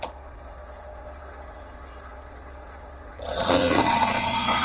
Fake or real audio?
fake